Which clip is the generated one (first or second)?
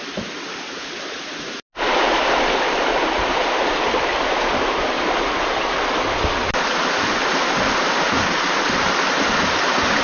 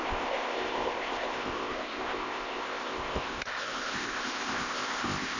second